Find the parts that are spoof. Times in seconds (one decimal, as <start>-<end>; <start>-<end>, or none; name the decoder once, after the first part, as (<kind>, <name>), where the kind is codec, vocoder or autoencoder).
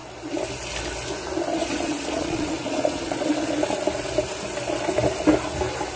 1.6-3.3 (vocoder, Vocos)